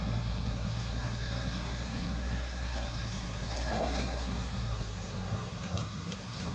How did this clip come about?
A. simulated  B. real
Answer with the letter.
A